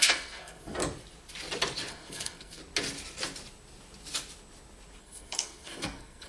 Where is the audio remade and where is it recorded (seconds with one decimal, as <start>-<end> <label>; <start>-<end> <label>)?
0.0-0.8 remade; 0.8-1.9 recorded; 1.9-2.6 remade; 2.6-5.0 recorded; 5.0-6.3 remade